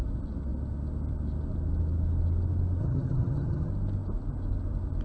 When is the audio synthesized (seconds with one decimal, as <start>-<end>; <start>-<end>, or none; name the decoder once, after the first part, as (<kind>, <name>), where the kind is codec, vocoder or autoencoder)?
2.8-3.7 (vocoder, HiFi-GAN)